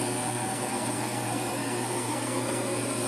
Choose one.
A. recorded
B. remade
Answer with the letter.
B